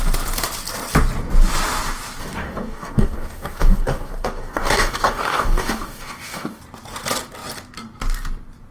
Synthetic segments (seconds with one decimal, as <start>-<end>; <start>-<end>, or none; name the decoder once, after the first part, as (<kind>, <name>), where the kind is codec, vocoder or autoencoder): 2.2-6.6 (codec, DAC)